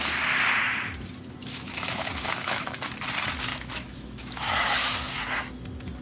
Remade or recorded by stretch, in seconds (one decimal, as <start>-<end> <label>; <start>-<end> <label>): 0.0-1.4 recorded; 1.4-2.9 remade; 2.9-3.5 recorded; 3.5-4.4 remade; 4.4-6.0 recorded